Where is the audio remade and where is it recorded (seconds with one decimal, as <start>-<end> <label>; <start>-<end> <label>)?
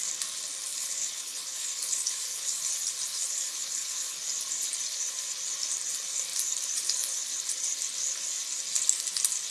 0.0-0.7 recorded; 0.7-2.7 remade; 2.7-3.1 recorded; 3.1-4.2 remade; 4.2-9.5 recorded